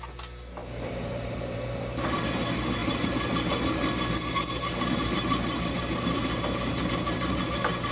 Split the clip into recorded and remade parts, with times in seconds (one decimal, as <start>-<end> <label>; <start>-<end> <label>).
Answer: 0.0-0.6 recorded; 0.6-2.2 remade; 2.2-2.8 recorded; 2.8-7.3 remade; 7.3-7.9 recorded